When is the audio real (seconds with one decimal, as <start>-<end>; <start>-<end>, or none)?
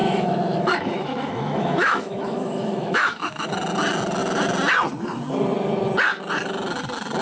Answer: 3.5-7.2